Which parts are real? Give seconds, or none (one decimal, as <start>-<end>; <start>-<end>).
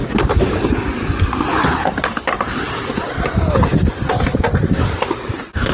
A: 3.4-5.7